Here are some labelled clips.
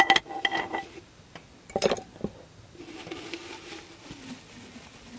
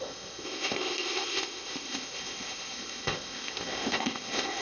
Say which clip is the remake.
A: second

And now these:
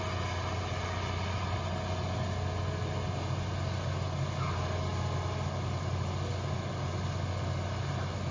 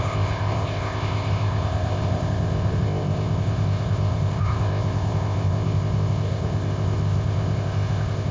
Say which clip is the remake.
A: second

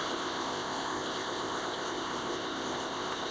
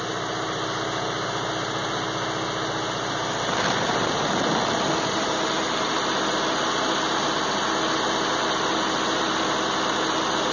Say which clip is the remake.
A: first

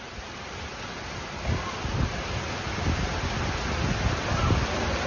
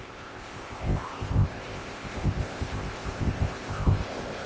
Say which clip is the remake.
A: second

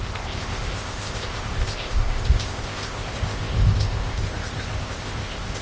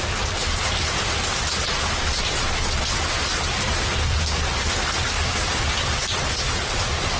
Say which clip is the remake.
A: first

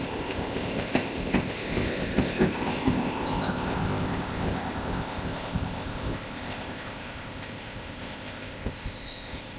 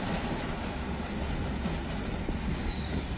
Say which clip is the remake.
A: first